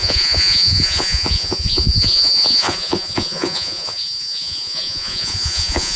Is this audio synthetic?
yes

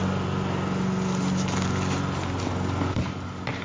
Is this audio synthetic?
no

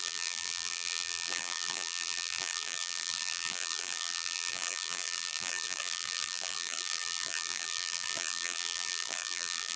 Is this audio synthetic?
yes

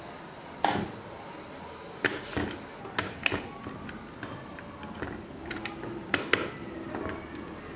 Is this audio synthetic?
no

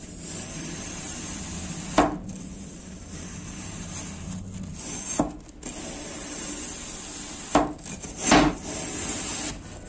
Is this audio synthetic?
no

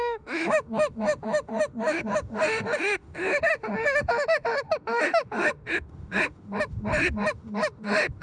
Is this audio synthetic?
yes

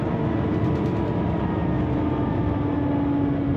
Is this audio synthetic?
no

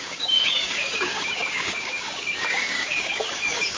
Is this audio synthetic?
yes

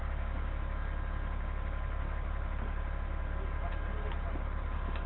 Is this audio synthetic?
no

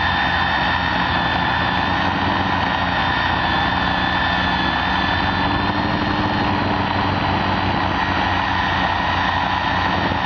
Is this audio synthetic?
no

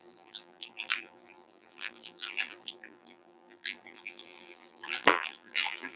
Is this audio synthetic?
yes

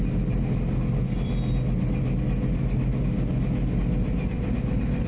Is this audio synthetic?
no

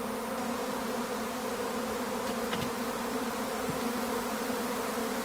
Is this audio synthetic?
no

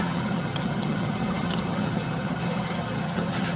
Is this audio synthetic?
yes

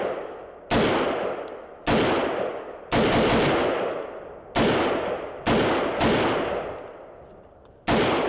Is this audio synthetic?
no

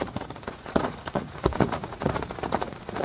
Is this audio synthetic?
yes